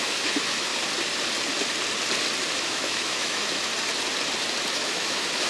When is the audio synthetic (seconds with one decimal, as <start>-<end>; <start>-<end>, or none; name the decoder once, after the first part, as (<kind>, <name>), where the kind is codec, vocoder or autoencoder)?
0.0-0.7 (autoencoder, DAC-VAE); 2.5-3.7; 4.7-5.5

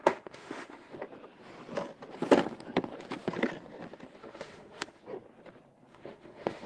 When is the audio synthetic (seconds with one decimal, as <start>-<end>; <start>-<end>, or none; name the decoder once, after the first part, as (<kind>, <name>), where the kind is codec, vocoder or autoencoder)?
0.0-0.9 (autoencoder, DAC-VAE); 4.2-5.0; 5.9-6.7

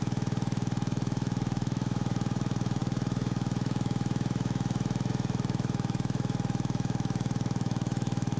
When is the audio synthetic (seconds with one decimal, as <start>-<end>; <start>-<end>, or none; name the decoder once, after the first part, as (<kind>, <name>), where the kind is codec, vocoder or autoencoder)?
0.0-8.4 (autoencoder, DAC-VAE)

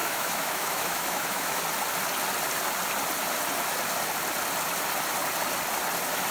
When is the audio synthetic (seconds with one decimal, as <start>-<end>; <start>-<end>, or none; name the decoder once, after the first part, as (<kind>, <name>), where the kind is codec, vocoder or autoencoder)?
0.0-1.6 (autoencoder, DAC-VAE)

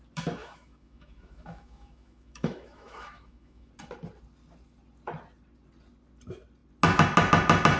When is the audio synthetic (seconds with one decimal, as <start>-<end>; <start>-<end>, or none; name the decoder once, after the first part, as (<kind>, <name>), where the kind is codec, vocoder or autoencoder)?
0.4-3.7 (autoencoder, DAC-VAE)

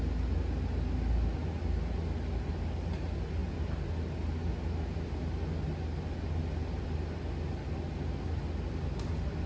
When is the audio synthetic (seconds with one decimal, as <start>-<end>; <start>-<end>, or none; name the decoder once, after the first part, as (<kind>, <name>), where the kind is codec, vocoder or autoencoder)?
none

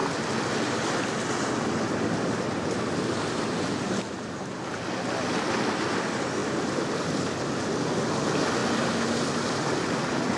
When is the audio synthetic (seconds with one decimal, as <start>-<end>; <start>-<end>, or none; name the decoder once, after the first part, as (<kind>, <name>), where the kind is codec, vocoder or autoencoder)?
none

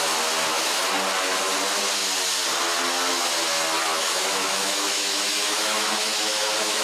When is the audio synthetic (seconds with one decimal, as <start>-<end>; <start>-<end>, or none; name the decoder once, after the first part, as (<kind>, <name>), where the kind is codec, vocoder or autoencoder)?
3.8-6.8 (autoencoder, DAC-VAE)